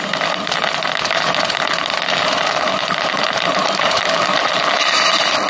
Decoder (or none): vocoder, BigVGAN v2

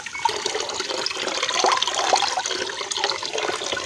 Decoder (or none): none